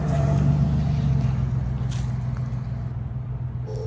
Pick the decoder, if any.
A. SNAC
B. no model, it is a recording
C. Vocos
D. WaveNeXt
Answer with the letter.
B